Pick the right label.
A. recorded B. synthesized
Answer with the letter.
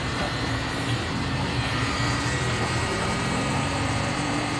B